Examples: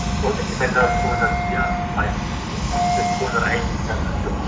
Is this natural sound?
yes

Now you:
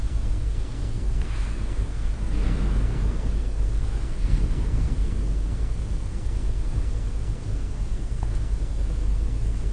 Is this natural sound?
no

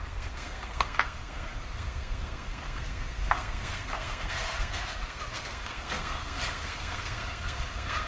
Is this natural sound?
no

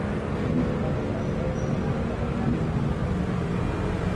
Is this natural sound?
yes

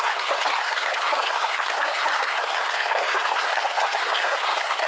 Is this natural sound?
no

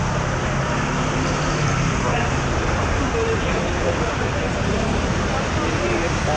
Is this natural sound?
yes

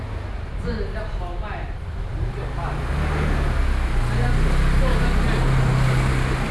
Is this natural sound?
yes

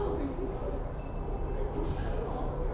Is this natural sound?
yes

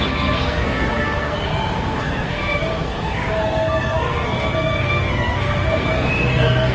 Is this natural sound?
no